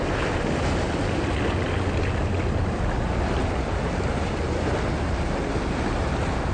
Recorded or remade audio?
recorded